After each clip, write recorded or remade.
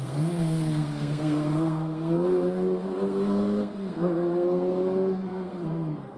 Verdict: remade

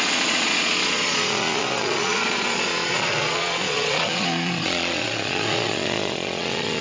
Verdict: remade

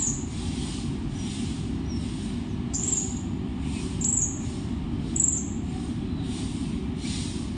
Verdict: recorded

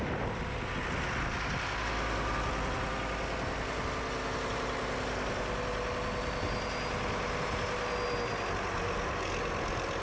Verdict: recorded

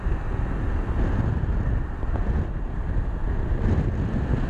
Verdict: recorded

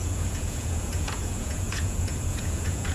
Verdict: remade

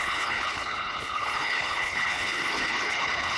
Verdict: remade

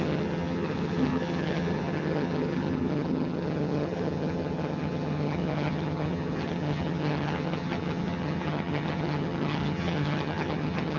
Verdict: remade